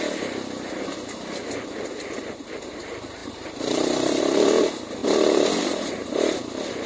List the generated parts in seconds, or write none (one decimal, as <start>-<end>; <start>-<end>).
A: 3.2-4.2; 5.0-6.4